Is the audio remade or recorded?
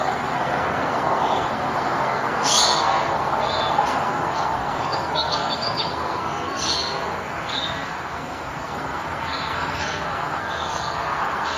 remade